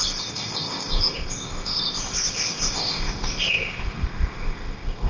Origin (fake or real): fake